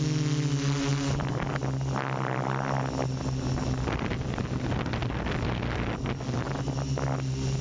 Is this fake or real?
real